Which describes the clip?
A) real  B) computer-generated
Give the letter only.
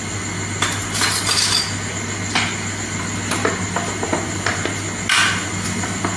A